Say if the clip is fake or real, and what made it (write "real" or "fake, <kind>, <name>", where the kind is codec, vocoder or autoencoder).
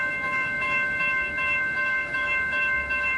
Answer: fake, autoencoder, DAC-VAE